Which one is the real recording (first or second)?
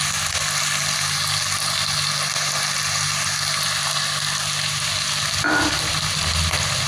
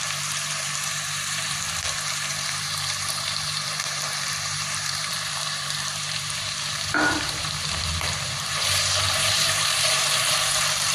first